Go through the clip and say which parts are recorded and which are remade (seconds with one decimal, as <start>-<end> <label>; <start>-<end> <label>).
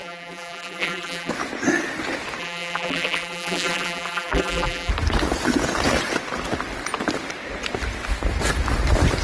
0.0-1.3 remade; 1.3-2.4 recorded; 2.4-4.9 remade; 4.9-9.2 recorded